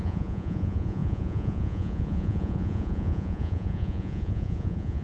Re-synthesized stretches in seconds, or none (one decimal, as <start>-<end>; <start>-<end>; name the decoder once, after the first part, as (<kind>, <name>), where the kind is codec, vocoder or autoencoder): 0.0-5.0 (vocoder, Vocos)